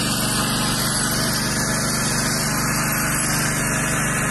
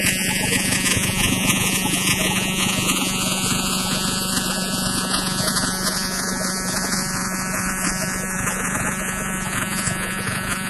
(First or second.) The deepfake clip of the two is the second